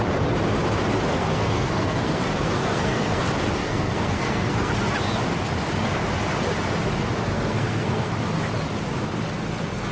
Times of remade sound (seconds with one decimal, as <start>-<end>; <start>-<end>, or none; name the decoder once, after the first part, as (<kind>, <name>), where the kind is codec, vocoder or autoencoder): 1.1-3.2 (codec, SNAC); 3.6-4.7; 7.3-8.1